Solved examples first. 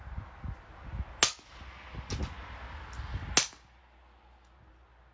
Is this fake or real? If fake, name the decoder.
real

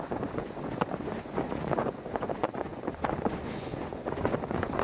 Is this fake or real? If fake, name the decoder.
fake, vocoder, Vocos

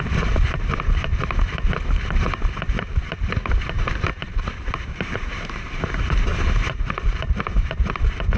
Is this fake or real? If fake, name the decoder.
fake, vocoder, BigVGAN v2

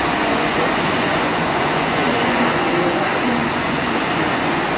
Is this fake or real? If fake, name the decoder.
fake, vocoder, Vocos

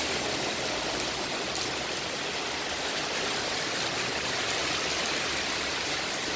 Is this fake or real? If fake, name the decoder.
real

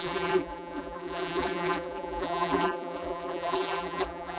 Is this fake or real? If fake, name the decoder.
fake, vocoder, BigVGAN v2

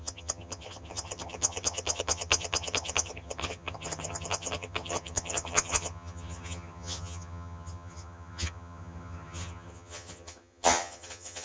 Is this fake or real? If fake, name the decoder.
fake, vocoder, HiFi-GAN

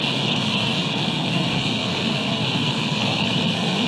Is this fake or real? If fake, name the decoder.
fake, codec, SNAC